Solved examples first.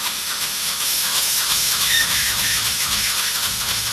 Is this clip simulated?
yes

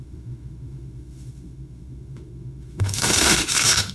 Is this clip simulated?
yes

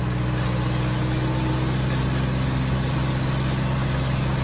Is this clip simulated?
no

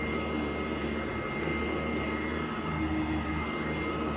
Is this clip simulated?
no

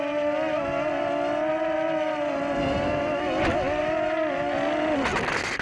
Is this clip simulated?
no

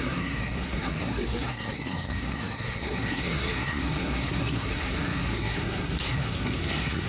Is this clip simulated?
yes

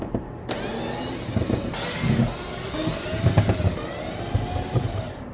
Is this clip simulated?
no